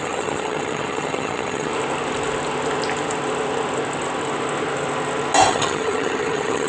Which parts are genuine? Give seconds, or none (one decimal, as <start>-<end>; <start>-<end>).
1.7-5.5